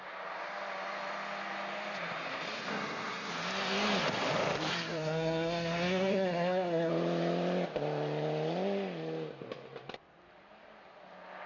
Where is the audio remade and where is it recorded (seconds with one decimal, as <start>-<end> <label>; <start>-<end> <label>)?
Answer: 0.0-2.7 recorded; 2.7-3.3 remade; 3.3-4.7 recorded; 4.7-6.9 remade; 6.9-11.5 recorded